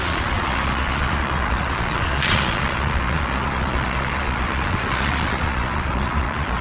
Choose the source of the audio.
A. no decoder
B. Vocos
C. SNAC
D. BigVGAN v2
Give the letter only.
B